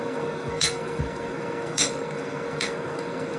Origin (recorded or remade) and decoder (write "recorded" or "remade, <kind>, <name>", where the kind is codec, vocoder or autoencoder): remade, codec, SNAC